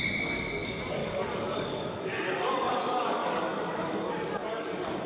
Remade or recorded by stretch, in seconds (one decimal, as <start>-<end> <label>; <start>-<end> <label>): 0.0-1.0 recorded; 1.0-4.1 remade; 4.1-4.5 recorded; 4.5-5.1 remade